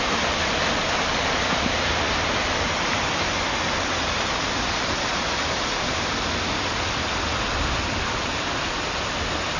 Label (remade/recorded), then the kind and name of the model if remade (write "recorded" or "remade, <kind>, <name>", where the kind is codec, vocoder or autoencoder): recorded